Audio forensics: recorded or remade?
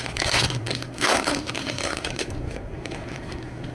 remade